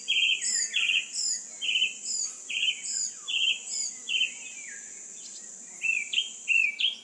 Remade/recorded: recorded